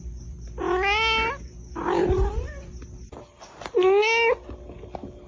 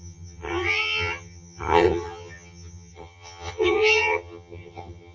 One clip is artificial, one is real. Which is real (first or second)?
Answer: first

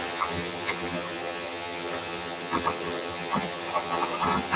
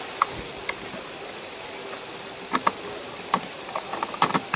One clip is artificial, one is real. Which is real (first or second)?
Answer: second